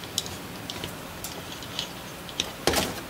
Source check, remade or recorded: recorded